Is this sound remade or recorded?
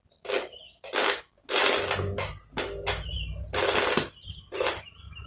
recorded